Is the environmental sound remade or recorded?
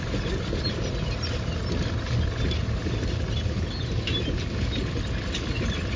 recorded